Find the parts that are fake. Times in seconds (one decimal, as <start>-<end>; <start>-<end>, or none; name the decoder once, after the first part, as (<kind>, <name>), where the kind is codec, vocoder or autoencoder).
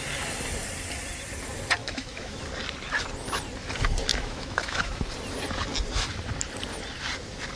1.8-2.4 (autoencoder, DAC-VAE); 4.1-5.0